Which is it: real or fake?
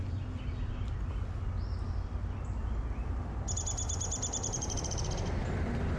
real